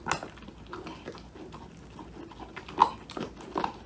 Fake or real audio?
real